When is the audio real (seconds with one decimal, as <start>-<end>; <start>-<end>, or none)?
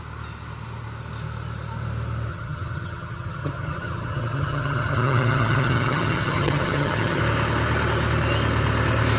0.0-2.3; 7.2-9.2